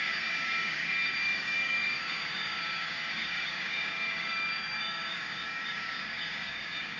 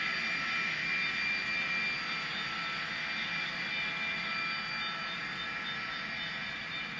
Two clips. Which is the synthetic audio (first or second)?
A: first